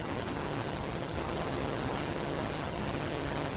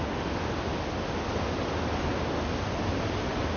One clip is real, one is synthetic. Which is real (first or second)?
second